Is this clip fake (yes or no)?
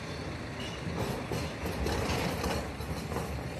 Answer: no